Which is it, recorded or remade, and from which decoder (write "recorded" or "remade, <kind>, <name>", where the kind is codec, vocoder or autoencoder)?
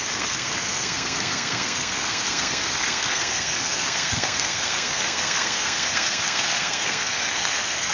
remade, codec, SNAC